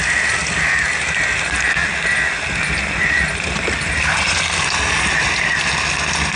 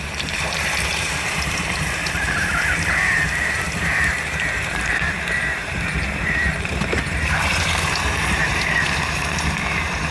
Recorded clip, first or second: first